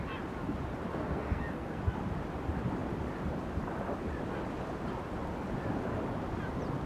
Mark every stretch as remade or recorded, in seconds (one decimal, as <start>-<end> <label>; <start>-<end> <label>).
0.0-0.9 recorded; 0.9-1.8 remade; 1.8-6.9 recorded